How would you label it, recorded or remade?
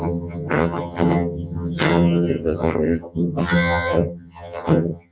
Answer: remade